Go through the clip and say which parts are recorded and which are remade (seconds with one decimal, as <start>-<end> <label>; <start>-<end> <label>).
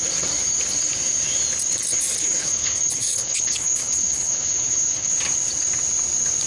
0.0-2.2 recorded; 2.2-5.1 remade; 5.1-6.5 recorded